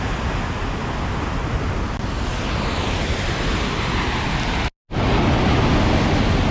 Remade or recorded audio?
recorded